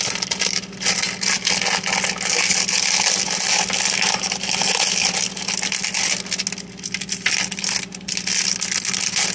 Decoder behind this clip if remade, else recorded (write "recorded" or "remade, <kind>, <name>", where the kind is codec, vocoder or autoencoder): recorded